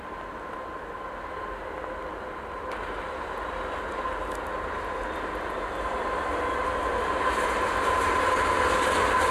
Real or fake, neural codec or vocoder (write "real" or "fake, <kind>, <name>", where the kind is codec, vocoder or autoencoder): real